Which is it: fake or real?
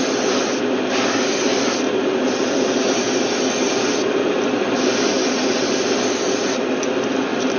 real